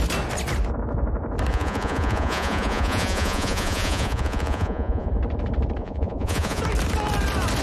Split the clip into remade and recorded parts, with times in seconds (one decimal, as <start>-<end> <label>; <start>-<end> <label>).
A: 0.0-1.5 recorded; 1.5-5.1 remade; 5.1-5.8 recorded; 5.8-6.6 remade; 6.6-7.6 recorded